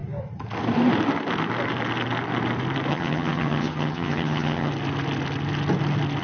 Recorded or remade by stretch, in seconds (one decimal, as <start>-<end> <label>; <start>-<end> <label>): 0.0-2.9 recorded; 2.9-4.7 remade; 4.7-6.2 recorded